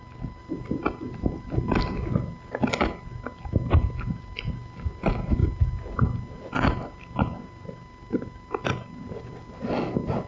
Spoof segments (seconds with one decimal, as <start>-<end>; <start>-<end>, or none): none